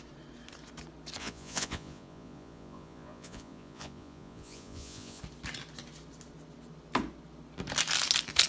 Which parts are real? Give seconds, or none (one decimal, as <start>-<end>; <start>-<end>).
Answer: 0.0-1.2; 5.2-8.5